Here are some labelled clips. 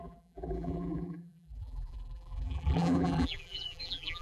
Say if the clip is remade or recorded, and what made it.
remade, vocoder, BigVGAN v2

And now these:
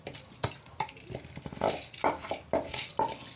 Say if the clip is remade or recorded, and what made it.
remade, vocoder, BigVGAN v2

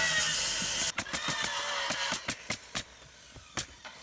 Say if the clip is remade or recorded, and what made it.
recorded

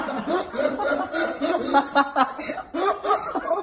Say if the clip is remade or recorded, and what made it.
recorded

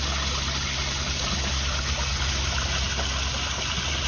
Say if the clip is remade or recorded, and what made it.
recorded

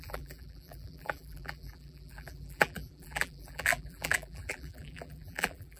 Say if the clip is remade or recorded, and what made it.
remade, vocoder, BigVGAN v2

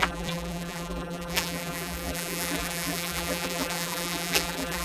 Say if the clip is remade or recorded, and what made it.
remade, vocoder, BigVGAN v2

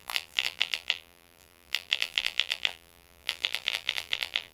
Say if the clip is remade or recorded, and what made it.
remade, vocoder, BigVGAN v2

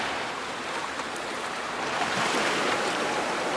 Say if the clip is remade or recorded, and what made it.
remade, vocoder, BigVGAN v2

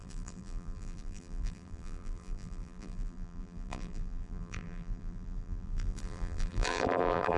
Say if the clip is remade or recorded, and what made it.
remade, vocoder, BigVGAN v2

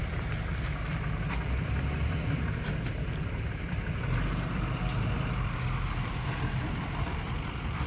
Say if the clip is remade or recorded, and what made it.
remade, vocoder, BigVGAN v2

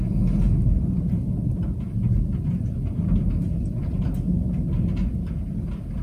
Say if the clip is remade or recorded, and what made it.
recorded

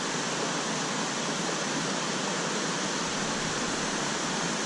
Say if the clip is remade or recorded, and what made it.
recorded